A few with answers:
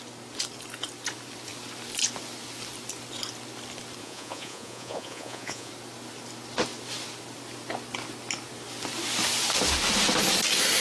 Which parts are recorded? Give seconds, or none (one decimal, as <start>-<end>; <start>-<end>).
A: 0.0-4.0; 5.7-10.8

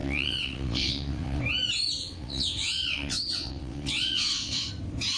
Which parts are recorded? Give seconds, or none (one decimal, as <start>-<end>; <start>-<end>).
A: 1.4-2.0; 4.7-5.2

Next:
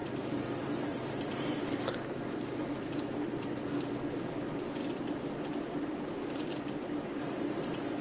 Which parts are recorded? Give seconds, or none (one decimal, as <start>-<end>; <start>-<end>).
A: 4.2-4.8; 7.3-8.0